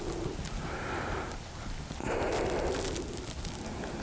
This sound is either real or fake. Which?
real